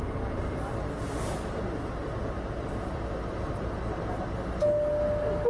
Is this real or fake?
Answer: real